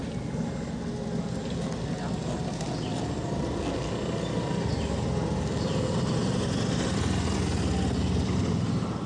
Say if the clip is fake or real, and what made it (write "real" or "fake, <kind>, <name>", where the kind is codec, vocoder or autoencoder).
real